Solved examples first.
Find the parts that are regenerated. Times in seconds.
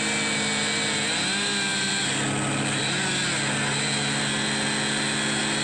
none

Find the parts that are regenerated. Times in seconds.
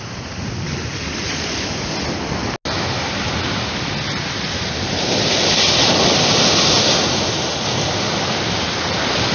none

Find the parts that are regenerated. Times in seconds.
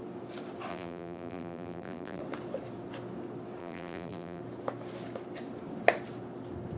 0.7-2.2 (vocoder, BigVGAN v2); 3.6-4.4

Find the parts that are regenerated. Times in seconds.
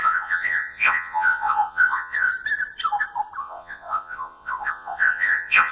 0.0-2.3 (vocoder, Vocos); 3.4-5.7